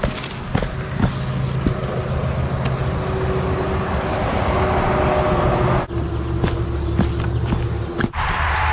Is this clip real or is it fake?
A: real